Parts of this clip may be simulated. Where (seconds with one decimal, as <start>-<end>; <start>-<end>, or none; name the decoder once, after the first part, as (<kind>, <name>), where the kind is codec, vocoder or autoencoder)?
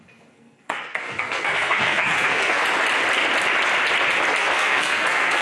0.0-2.6 (codec, SNAC); 4.4-5.4